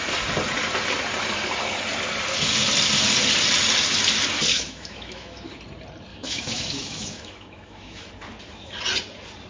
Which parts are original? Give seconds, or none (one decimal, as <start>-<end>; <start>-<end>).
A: 0.0-4.5; 5.5-6.1; 8.1-9.5